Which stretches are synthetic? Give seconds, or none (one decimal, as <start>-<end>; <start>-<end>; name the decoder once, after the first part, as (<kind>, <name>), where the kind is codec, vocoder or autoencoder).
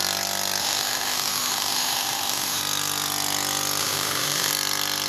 0.6-2.6 (autoencoder, DAC-VAE); 3.8-4.5